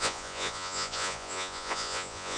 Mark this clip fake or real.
fake